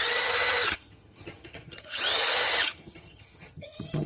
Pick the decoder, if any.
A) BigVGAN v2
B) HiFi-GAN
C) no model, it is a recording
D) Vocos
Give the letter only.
B